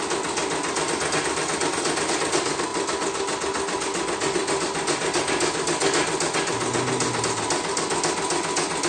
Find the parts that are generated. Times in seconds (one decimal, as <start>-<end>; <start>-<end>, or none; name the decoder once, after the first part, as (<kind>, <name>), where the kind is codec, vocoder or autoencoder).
none